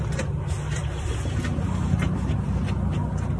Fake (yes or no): no